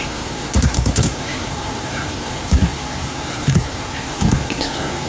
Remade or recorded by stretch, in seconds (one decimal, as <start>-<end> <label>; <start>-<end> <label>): 0.0-5.1 remade